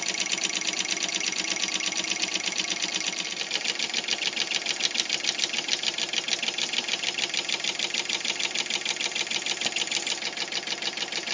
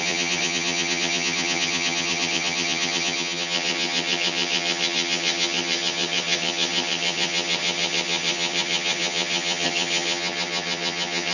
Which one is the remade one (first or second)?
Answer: second